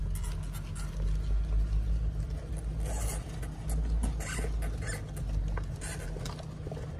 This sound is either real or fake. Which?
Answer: real